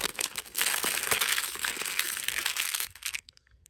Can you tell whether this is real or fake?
fake